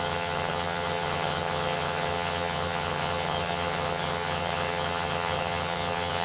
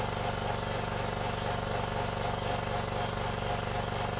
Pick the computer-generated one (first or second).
first